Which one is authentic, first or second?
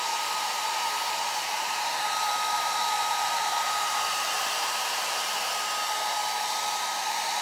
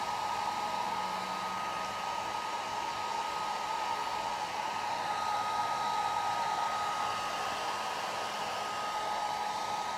second